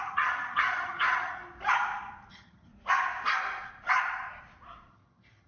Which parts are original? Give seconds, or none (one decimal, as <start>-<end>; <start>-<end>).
1.4-2.3; 2.7-4.9